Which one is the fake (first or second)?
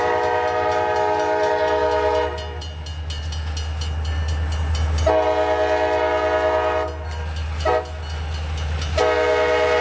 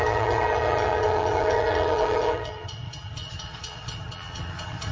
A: second